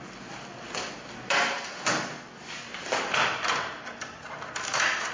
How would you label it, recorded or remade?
recorded